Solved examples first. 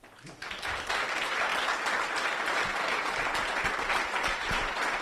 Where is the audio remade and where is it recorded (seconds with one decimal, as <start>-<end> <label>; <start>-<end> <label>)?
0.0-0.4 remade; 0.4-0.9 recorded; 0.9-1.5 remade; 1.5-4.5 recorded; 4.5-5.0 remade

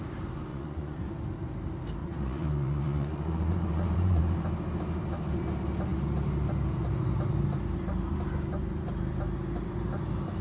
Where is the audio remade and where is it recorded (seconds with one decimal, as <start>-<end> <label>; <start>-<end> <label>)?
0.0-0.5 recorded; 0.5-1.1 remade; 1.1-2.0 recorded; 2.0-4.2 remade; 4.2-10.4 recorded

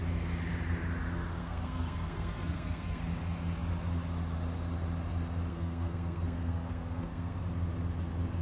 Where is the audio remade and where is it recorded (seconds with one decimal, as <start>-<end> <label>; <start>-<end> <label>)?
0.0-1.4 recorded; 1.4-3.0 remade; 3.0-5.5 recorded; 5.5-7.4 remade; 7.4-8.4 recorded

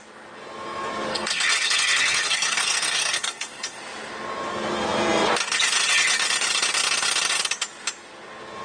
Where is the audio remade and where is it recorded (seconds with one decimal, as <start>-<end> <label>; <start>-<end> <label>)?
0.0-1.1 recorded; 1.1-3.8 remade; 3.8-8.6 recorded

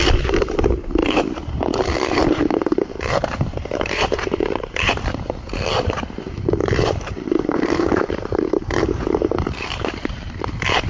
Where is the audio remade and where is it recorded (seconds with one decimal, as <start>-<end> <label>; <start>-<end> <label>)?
0.0-1.0 recorded; 1.0-5.3 remade; 5.3-6.6 recorded; 6.6-10.3 remade; 10.3-10.9 recorded

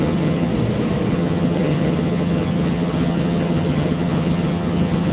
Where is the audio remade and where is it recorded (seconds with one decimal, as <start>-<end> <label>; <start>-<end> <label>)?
0.0-0.5 remade; 0.5-1.1 recorded; 1.1-5.1 remade

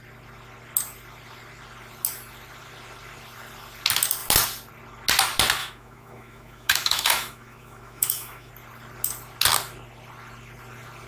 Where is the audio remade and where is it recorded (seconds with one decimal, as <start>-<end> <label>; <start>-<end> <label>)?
0.0-5.6 recorded; 5.6-8.5 remade; 8.5-11.1 recorded